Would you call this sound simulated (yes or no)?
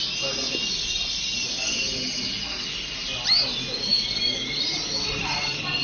no